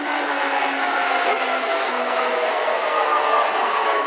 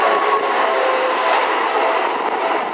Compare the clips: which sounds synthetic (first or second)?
first